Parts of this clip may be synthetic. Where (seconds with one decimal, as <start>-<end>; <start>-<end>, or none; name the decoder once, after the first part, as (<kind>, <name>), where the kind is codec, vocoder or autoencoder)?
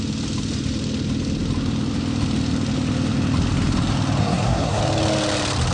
4.2-4.8 (codec, SNAC)